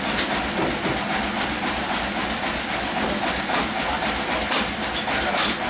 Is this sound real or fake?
real